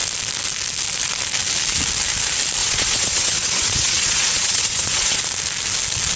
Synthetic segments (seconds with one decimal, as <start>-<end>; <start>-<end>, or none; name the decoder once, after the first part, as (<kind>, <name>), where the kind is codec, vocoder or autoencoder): 2.6-5.2 (vocoder, WaveNeXt)